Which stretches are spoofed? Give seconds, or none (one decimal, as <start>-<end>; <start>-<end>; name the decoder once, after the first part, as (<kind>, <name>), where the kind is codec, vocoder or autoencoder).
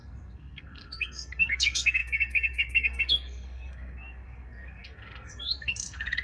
0.0-6.2 (codec, SNAC)